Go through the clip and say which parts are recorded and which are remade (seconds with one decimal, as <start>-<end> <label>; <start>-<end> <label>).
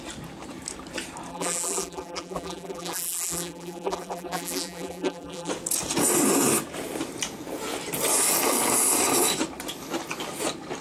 0.0-1.3 recorded; 1.3-5.5 remade; 5.5-10.8 recorded